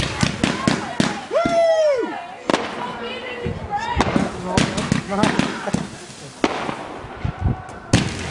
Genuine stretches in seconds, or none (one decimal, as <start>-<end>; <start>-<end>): 0.0-8.3